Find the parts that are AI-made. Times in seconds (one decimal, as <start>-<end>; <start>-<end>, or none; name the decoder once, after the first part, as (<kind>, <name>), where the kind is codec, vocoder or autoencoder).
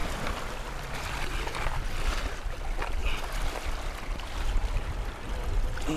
0.0-3.0 (vocoder, BigVGAN v2)